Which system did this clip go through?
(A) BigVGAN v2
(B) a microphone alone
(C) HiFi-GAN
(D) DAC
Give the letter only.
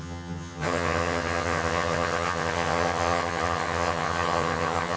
C